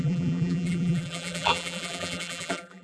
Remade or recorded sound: remade